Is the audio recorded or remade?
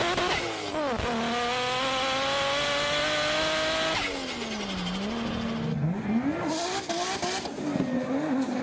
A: recorded